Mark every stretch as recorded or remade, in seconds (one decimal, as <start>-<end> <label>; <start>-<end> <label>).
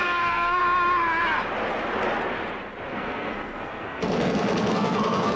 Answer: 0.0-0.6 remade; 0.6-2.9 recorded; 2.9-5.4 remade